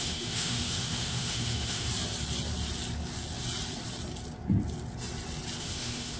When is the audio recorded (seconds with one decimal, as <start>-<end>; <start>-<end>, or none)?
1.9-5.6